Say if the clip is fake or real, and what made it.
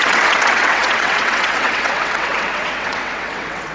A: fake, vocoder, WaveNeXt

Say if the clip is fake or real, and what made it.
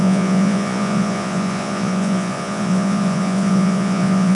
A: fake, vocoder, Vocos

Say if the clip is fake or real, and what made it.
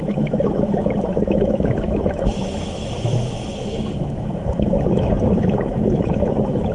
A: fake, autoencoder, DAC-VAE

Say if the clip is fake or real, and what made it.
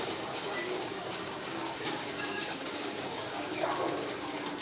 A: fake, codec, DAC